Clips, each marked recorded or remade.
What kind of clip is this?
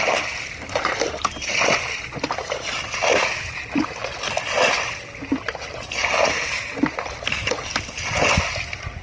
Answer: recorded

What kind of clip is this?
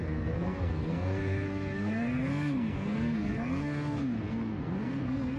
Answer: remade